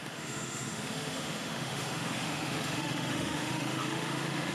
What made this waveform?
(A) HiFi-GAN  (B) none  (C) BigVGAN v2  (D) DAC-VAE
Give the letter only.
D